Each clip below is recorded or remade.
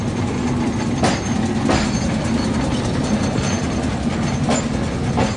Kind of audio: recorded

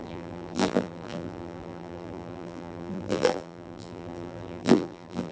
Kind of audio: remade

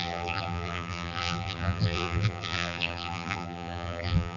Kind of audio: remade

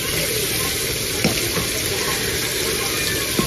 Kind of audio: recorded